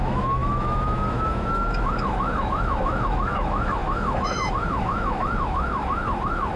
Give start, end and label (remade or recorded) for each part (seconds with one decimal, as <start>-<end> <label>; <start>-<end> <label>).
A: 0.0-6.6 remade